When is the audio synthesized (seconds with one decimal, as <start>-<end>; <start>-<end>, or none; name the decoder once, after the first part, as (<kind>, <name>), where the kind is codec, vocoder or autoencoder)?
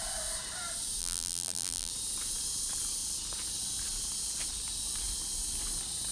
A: 1.0-1.9 (vocoder, BigVGAN v2)